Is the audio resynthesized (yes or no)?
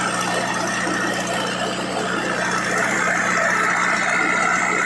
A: no